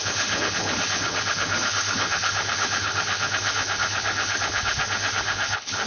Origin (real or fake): fake